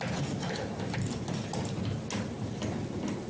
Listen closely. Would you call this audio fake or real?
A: real